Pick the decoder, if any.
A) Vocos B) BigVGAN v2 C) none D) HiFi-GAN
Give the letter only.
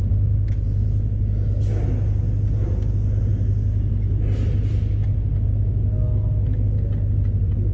C